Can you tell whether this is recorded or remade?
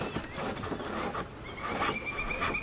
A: recorded